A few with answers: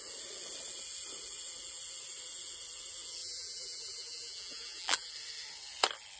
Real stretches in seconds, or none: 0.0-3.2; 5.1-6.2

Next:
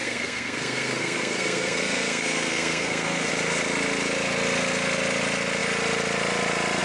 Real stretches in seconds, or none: 3.3-6.8

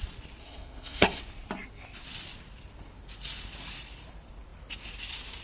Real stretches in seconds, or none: 0.0-0.4; 1.2-5.4

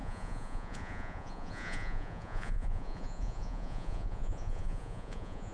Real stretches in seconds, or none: none

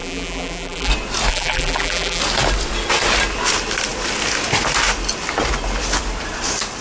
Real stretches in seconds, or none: 0.9-1.3; 2.2-6.8

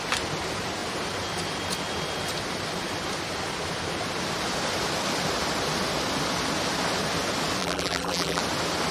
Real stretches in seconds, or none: 0.0-7.6; 8.4-8.9

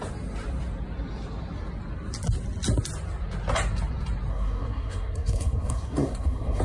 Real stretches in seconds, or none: 0.0-4.3

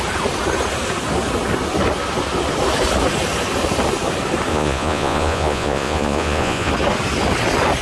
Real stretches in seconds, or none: 0.0-4.5; 6.7-7.8